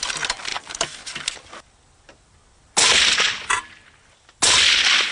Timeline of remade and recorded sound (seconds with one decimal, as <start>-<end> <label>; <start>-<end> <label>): 0.0-5.1 recorded